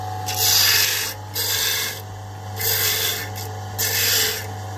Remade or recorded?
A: recorded